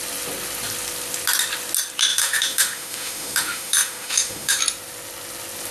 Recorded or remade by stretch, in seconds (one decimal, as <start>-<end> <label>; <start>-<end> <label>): 0.0-2.1 recorded; 2.1-4.6 remade; 4.6-5.7 recorded